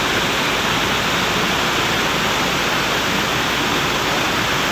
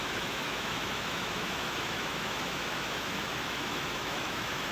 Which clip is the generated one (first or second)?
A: second